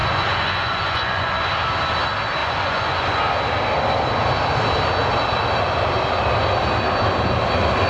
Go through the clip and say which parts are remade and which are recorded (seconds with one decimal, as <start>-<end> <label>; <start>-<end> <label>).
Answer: 0.0-1.5 remade; 1.5-2.4 recorded; 2.4-3.2 remade; 3.2-7.9 recorded